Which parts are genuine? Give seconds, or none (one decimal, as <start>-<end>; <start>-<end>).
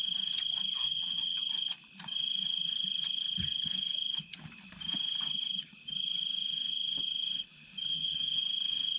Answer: 0.0-0.8; 1.4-7.9; 8.4-9.0